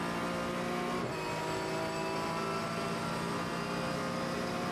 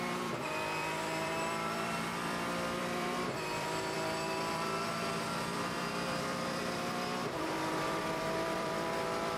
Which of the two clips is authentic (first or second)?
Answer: first